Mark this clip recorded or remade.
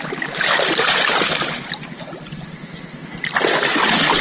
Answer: recorded